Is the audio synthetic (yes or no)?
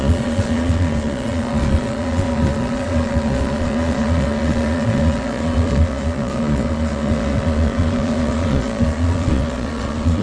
yes